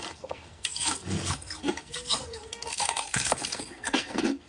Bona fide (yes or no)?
no